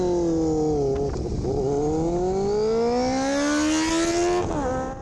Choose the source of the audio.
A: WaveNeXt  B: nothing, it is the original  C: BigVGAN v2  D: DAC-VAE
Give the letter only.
B